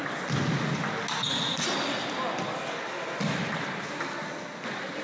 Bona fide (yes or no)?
yes